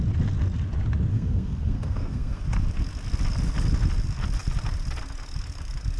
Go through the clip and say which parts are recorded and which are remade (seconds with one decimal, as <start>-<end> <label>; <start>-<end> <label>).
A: 0.0-1.1 recorded; 1.1-2.4 remade; 2.4-6.0 recorded